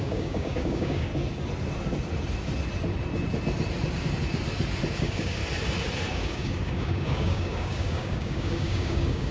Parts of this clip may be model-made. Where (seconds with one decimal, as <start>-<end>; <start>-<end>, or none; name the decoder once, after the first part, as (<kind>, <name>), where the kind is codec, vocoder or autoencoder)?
0.0-1.1 (codec, DAC); 5.0-5.4; 6.1-9.3